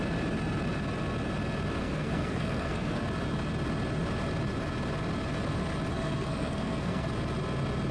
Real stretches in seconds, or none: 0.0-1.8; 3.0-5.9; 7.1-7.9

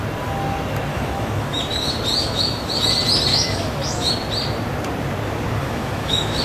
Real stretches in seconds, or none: 0.0-0.9; 1.6-2.2; 2.7-3.3; 4.1-5.6

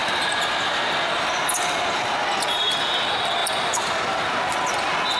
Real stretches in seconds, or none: 0.0-5.2

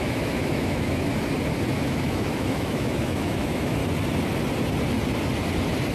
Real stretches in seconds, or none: 1.1-1.7; 3.8-5.9

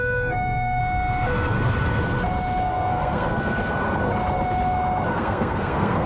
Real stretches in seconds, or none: 0.8-2.6; 3.6-5.1